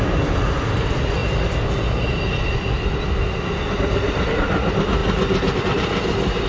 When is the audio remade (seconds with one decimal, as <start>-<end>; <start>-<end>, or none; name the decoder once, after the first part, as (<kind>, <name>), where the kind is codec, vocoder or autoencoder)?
none